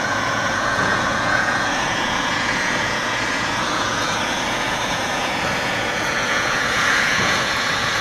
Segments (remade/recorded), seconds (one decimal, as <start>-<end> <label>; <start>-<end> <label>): 0.0-8.0 remade